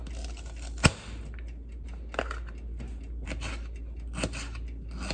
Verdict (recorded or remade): recorded